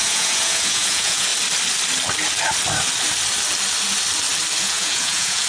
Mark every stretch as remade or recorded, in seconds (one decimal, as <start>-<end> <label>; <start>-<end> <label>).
0.0-1.3 remade; 1.3-4.6 recorded; 4.6-5.5 remade